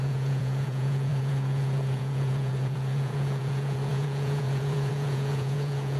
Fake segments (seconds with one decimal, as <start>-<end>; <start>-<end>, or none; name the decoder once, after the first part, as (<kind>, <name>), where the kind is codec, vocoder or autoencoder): 0.0-6.0 (vocoder, Vocos)